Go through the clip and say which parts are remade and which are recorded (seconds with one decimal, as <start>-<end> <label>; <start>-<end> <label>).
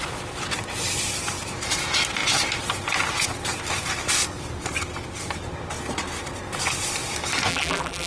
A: 0.0-7.5 recorded; 7.5-8.1 remade